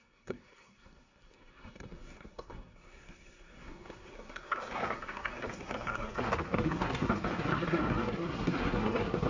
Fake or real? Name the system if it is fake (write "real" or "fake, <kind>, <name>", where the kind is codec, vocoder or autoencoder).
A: fake, codec, SNAC